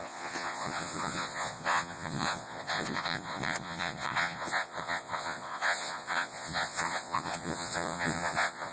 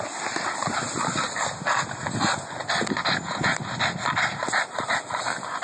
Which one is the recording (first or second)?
second